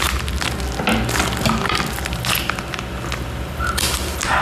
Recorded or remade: recorded